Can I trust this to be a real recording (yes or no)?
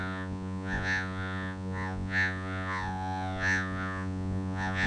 no